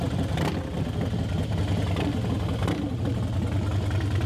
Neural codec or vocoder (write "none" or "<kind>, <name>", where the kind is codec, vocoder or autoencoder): none